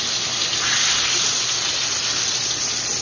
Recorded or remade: recorded